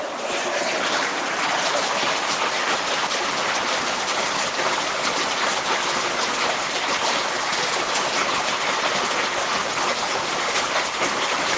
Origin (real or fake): real